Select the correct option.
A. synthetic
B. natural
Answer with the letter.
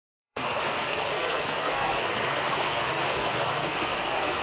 A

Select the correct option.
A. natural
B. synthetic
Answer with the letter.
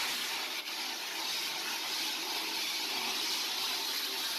A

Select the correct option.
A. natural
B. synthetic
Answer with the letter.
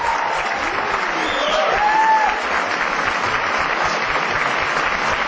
A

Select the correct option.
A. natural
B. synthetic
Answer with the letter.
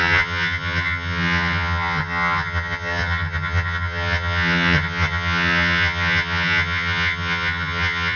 B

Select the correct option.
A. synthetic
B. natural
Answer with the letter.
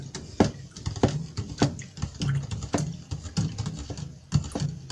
B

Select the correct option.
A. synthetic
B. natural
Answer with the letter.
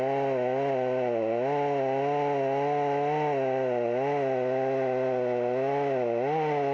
B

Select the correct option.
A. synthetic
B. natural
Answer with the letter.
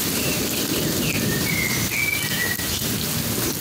B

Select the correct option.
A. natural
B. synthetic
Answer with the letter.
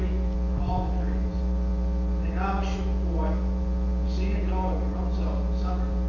B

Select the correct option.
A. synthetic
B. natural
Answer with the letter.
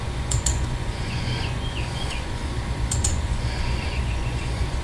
A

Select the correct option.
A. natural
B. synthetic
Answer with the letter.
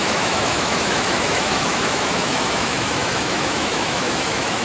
B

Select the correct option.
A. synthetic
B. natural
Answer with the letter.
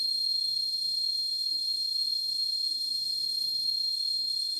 A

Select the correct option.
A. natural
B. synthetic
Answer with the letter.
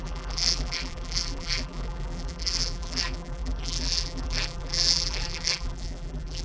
B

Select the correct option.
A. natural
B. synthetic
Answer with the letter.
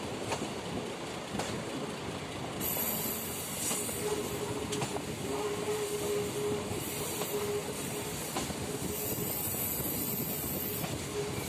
A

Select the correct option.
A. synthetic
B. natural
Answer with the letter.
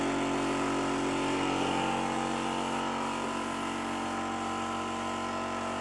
B